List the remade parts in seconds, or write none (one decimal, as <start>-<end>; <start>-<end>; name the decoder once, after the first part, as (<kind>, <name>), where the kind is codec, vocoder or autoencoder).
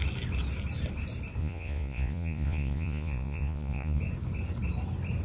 1.4-4.0 (vocoder, Vocos)